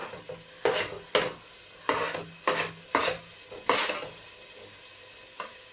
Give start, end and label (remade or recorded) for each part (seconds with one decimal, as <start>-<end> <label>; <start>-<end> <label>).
0.0-5.7 recorded